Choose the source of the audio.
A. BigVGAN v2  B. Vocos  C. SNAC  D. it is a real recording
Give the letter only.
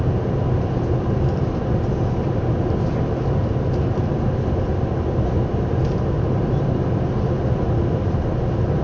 D